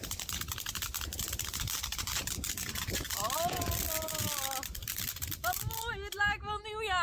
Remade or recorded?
recorded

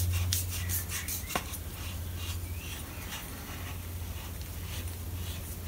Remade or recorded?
recorded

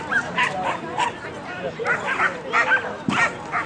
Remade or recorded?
recorded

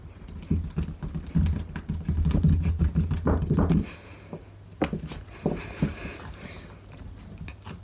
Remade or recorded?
recorded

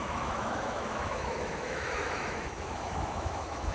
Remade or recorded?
remade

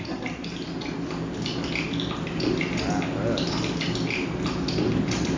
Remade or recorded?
recorded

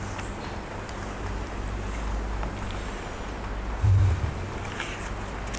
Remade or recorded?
recorded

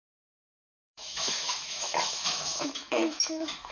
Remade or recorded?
remade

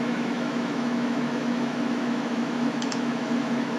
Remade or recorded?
remade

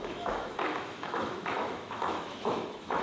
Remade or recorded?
remade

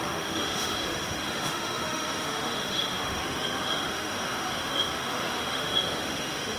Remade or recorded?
remade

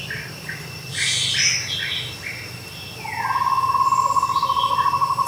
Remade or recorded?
recorded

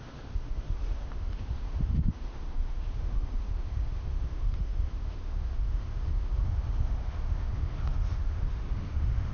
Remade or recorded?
remade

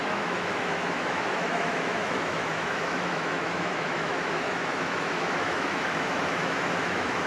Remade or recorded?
remade